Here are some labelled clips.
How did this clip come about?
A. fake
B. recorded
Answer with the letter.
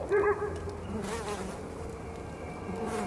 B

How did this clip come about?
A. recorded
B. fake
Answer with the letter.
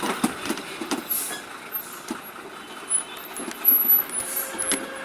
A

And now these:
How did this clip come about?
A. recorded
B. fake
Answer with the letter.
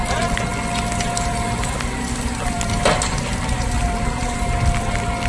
A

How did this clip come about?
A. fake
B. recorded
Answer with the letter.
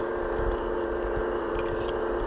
B